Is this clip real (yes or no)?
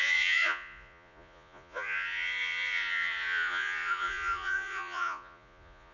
no